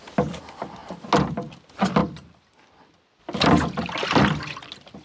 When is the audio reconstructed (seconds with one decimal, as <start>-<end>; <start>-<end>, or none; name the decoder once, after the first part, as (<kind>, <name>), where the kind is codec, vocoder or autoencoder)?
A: none